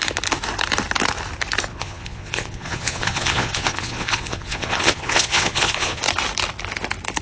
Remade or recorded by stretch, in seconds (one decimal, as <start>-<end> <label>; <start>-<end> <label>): 0.0-1.7 recorded; 1.7-6.0 remade; 6.0-7.2 recorded